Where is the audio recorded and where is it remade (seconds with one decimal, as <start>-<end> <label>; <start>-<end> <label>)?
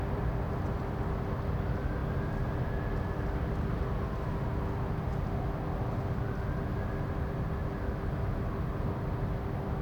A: 0.0-9.8 recorded